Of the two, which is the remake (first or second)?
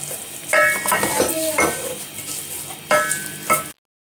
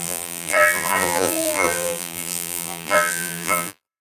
second